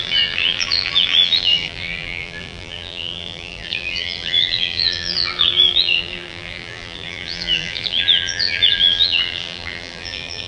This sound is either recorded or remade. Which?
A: remade